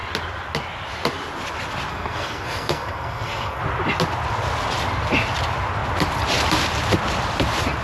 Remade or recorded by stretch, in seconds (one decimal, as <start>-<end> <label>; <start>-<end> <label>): 0.0-1.9 recorded; 1.9-3.6 remade; 3.6-7.8 recorded